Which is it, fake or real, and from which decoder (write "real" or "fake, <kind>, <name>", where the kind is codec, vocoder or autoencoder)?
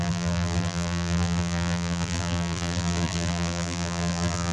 fake, vocoder, BigVGAN v2